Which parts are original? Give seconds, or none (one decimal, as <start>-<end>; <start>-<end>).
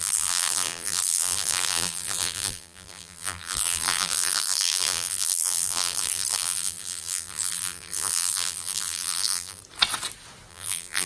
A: 9.6-10.5